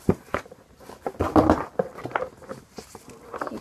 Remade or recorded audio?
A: recorded